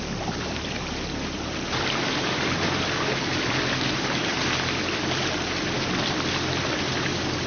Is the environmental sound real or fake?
real